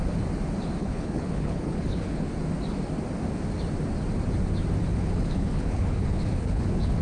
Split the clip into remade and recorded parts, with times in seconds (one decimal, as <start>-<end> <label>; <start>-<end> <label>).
0.0-0.8 recorded; 0.8-2.3 remade; 2.3-4.9 recorded; 4.9-7.0 remade